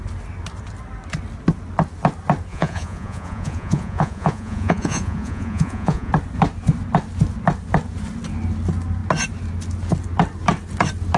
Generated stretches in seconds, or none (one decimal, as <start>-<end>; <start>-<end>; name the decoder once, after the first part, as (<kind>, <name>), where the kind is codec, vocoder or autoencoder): 2.5-6.1 (vocoder, Vocos)